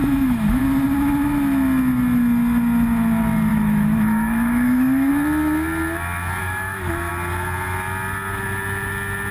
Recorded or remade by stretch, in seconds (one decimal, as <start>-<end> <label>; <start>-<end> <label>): 0.0-0.6 remade; 0.6-3.5 recorded; 3.5-5.1 remade; 5.1-6.4 recorded; 6.4-7.1 remade; 7.1-9.3 recorded